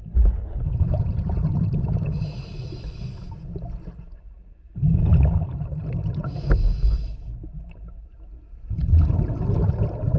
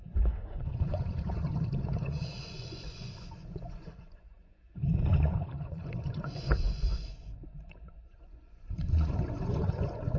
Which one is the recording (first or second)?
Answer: first